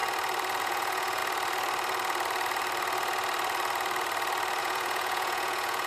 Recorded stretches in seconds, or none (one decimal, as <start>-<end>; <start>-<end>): 0.0-0.6; 1.2-4.6